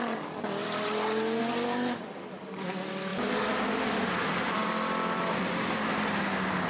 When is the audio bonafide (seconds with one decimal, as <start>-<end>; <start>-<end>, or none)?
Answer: 0.0-6.7